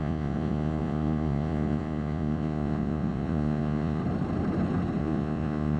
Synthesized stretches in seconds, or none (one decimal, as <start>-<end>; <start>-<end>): 0.0-4.0; 5.0-5.8